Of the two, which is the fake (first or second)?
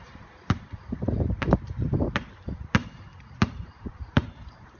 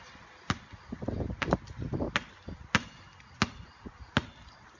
first